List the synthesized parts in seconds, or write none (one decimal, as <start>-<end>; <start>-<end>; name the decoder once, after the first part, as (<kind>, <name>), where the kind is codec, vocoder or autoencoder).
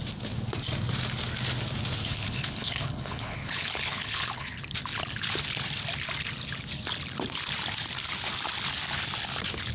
2.1-4.5 (codec, HILCodec)